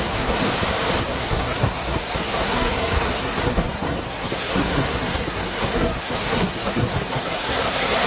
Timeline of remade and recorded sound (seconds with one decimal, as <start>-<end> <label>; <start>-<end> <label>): 0.0-0.4 remade; 0.4-1.0 recorded; 1.0-8.1 remade